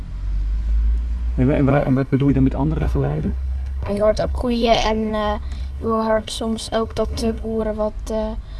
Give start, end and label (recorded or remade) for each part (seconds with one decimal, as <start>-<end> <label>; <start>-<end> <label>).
0.0-1.7 recorded; 1.7-2.3 remade; 2.3-2.8 recorded; 2.8-5.1 remade; 5.1-5.6 recorded; 5.6-7.6 remade; 7.6-8.6 recorded